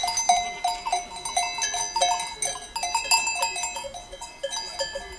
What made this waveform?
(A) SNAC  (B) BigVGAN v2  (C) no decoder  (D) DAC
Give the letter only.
C